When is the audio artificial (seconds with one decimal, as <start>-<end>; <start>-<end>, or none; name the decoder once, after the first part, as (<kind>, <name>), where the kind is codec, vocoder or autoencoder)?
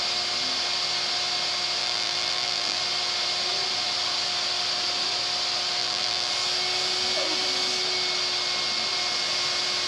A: 1.8-2.8 (vocoder, BigVGAN v2); 5.8-6.3